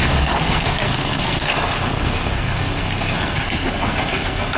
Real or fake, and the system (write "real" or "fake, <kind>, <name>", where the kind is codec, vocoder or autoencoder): fake, codec, SNAC